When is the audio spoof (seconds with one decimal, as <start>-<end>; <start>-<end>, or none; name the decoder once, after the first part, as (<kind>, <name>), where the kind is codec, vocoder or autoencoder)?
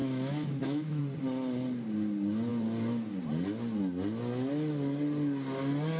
0.0-1.0 (autoencoder, DAC-VAE)